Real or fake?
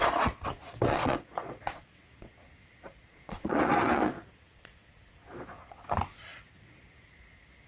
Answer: fake